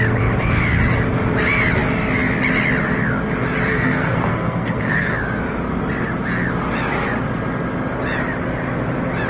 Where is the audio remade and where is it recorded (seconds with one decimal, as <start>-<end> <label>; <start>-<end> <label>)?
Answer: 0.0-3.7 recorded; 3.7-5.1 remade; 5.1-9.3 recorded

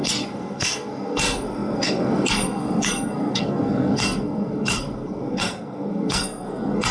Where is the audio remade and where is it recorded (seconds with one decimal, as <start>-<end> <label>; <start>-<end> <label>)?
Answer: 0.0-6.9 remade